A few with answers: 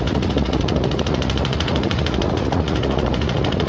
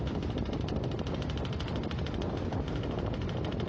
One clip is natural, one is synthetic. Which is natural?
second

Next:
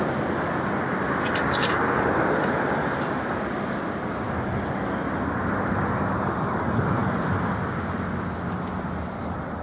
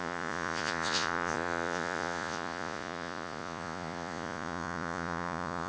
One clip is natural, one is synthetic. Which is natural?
first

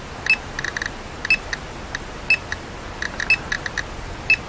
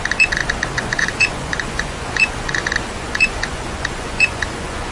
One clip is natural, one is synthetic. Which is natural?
first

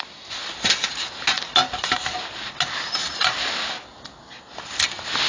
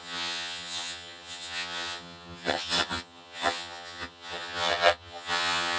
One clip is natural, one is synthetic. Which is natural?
first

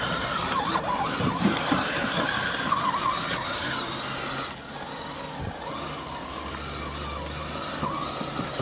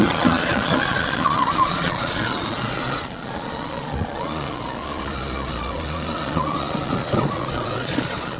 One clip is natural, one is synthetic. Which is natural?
first